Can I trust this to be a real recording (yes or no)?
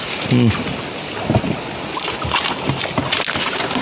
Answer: yes